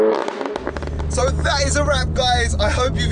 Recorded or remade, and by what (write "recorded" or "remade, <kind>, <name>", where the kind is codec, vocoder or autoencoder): recorded